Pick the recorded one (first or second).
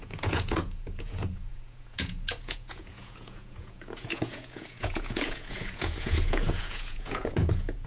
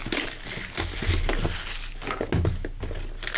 second